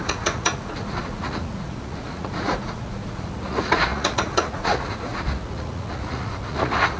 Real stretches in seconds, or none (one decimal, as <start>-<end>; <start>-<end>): none